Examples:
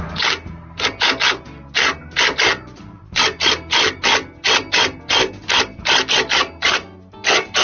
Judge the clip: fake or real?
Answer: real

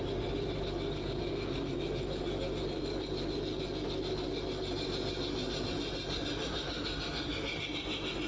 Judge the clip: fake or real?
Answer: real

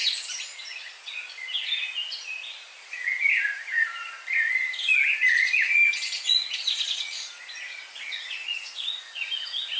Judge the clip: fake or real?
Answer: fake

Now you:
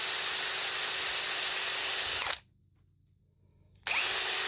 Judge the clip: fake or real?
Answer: real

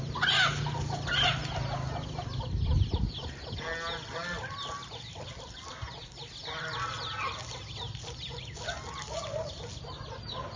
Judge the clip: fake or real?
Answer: real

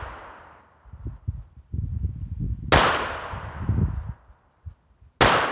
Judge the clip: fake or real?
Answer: real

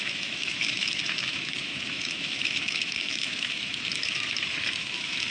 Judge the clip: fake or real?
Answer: fake